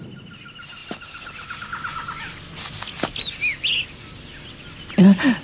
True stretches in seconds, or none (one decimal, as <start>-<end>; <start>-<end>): 0.0-5.4